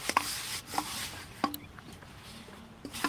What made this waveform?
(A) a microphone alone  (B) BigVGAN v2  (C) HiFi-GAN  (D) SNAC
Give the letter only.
A